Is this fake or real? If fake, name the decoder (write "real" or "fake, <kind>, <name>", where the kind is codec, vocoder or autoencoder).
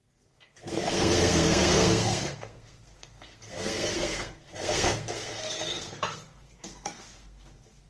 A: fake, codec, SNAC